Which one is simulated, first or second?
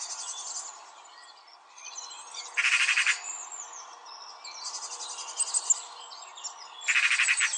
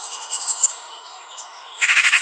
second